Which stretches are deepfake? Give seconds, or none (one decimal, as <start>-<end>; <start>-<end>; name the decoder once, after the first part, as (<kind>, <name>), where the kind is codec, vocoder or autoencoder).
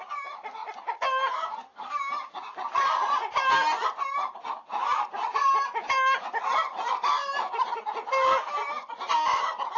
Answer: 0.6-1.8 (vocoder, BigVGAN v2)